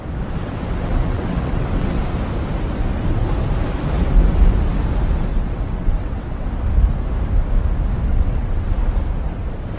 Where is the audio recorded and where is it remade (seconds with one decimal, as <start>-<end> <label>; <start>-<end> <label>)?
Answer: 0.0-0.4 recorded; 0.4-2.0 remade; 2.0-5.3 recorded; 5.3-6.5 remade; 6.5-8.1 recorded; 8.1-8.7 remade; 8.7-9.8 recorded